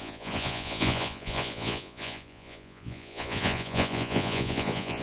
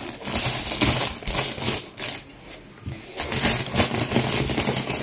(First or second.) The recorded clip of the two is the second